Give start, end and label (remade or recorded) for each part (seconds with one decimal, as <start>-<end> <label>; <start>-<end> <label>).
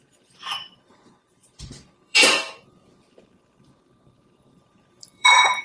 0.0-5.6 remade